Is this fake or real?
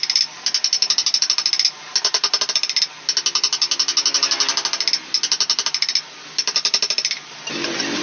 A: real